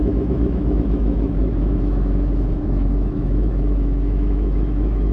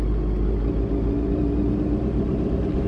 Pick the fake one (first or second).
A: first